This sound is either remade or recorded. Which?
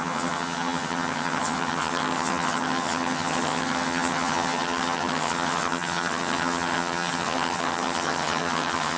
remade